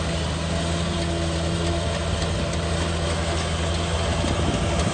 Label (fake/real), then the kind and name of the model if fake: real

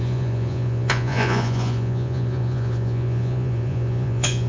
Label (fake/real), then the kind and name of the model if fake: fake, vocoder, Vocos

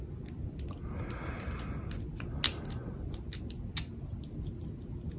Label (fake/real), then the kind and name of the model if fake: real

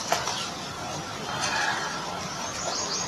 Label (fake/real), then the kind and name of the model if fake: real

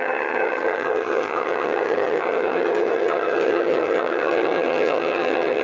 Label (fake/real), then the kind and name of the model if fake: fake, vocoder, HiFi-GAN